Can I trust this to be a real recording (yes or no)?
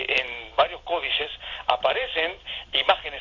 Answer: no